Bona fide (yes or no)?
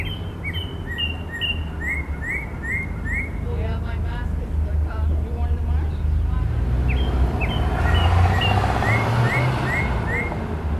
yes